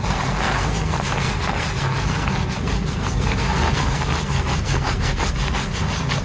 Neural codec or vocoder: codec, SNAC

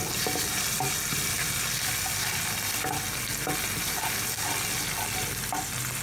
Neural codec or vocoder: none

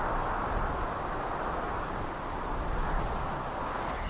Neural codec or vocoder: none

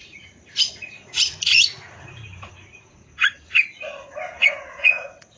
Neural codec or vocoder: vocoder, Vocos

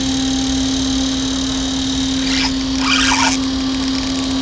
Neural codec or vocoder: none